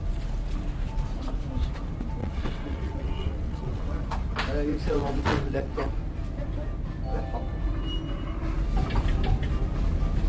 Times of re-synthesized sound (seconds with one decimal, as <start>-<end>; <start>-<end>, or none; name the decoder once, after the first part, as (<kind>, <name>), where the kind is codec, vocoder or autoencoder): 2.2-4.0 (vocoder, WaveNeXt); 4.7-5.9